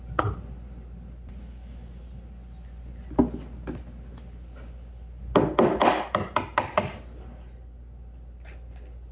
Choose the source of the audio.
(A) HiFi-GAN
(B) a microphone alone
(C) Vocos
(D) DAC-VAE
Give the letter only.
B